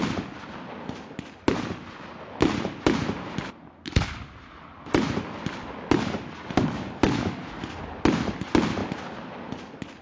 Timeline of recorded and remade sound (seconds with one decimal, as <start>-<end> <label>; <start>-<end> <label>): 0.0-10.0 recorded